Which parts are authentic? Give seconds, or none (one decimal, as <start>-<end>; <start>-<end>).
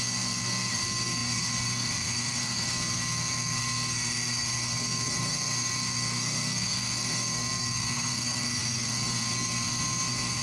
none